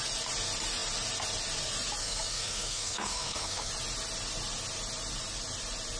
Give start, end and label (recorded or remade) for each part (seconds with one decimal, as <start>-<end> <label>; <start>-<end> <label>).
0.0-2.0 recorded; 2.0-3.7 remade; 3.7-6.0 recorded